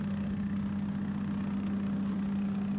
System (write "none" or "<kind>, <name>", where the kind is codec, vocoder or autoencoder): none